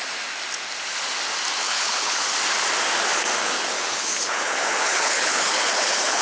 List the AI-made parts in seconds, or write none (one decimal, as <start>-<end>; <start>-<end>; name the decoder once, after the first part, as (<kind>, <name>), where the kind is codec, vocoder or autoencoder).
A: 1.6-2.2 (codec, HILCodec); 3.4-6.2